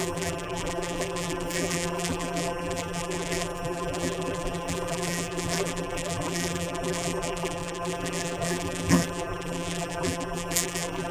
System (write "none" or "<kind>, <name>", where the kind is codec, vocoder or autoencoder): vocoder, BigVGAN v2